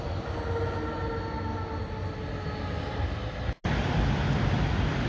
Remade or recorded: recorded